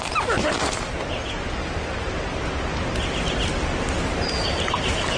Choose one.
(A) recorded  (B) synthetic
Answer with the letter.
A